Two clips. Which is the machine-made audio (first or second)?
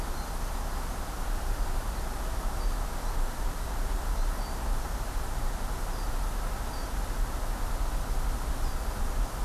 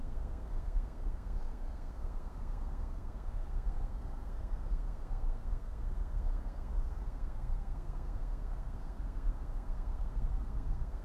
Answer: second